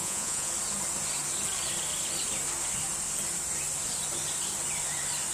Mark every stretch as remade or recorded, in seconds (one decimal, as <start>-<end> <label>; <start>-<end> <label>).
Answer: 0.0-0.5 remade; 0.5-5.3 recorded